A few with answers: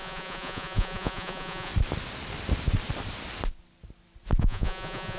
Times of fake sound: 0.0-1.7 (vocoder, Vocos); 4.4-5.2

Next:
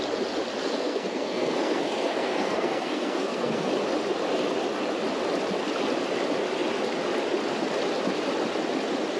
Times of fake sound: 0.6-3.7 (codec, SNAC)

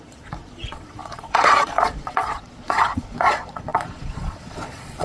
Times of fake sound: 0.0-5.0 (vocoder, Vocos)

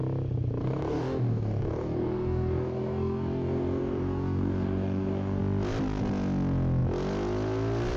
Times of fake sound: 0.6-5.4 (codec, DAC)